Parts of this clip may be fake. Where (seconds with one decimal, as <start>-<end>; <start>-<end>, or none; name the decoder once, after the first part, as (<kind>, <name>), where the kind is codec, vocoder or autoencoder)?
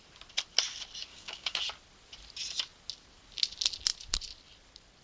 1.1-1.6 (codec, DAC)